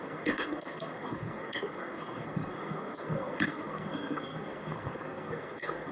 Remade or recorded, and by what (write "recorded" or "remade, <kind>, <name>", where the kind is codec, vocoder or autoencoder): remade, codec, SNAC